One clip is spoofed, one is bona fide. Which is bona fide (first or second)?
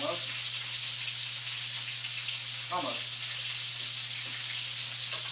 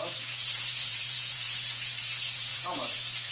first